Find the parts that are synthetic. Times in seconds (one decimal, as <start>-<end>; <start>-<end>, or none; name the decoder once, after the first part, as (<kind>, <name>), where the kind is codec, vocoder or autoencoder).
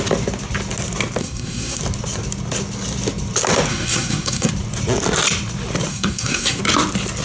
1.2-1.8 (codec, SNAC); 3.7-4.5; 5.9-6.6